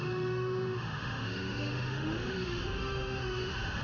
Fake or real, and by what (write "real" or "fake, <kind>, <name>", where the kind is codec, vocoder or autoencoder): fake, autoencoder, DAC-VAE